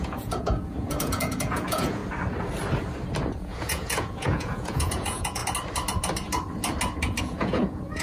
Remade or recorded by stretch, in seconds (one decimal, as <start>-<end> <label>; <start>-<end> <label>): 0.0-2.0 remade; 2.0-3.4 recorded; 3.4-5.4 remade; 5.4-7.2 recorded; 7.2-8.0 remade